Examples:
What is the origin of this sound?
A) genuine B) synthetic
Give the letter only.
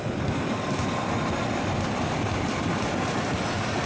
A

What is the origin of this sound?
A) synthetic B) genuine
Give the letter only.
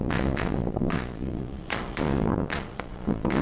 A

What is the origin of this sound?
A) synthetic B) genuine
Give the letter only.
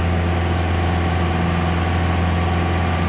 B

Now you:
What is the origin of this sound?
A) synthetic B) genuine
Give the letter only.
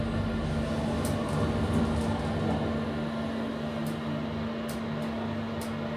B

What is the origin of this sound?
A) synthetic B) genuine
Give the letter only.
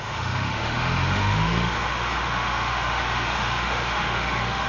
A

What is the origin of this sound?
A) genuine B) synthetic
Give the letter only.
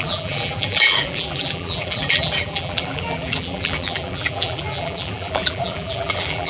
B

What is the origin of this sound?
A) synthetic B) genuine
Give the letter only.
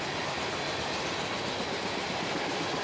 B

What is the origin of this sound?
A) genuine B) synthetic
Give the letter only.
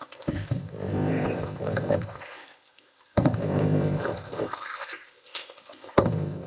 B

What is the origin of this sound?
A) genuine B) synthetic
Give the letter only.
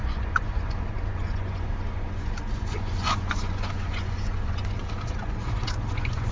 B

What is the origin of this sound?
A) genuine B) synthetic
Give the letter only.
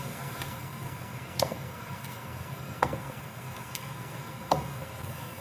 B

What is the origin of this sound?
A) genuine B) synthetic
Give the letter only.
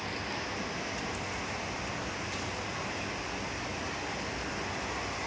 A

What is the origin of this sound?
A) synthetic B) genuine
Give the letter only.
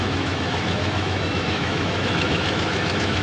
A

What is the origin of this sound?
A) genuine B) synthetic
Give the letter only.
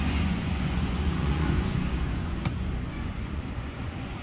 B